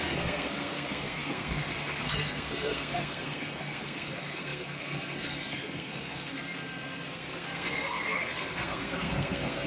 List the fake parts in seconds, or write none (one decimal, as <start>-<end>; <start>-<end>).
0.0-9.7